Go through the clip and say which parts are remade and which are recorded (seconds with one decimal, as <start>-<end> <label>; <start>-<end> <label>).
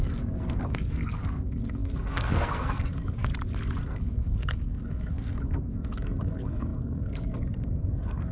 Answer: 0.0-3.3 remade; 3.3-3.8 recorded; 3.8-8.3 remade